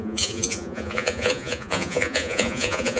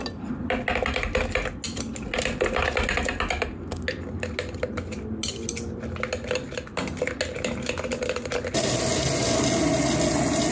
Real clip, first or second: second